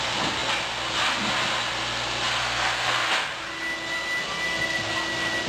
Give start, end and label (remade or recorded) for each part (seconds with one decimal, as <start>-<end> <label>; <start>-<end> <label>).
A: 0.0-2.4 recorded; 2.4-3.1 remade; 3.1-5.5 recorded